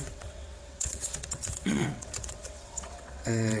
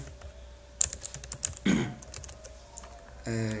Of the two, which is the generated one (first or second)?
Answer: first